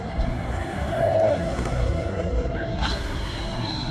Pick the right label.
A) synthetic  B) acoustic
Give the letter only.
A